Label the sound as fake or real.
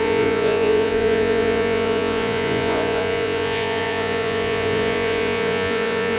fake